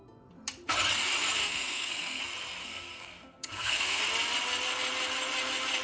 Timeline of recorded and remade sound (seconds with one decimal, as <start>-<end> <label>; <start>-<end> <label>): 0.0-1.4 recorded; 1.4-2.2 remade; 2.2-2.6 recorded; 2.6-4.0 remade; 4.0-5.8 recorded